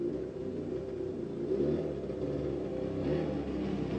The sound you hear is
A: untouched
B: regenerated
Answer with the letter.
A